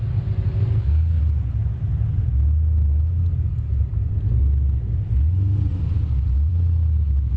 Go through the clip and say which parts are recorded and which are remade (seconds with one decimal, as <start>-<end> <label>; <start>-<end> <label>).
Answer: 0.0-0.6 recorded; 0.6-1.2 remade; 1.2-7.4 recorded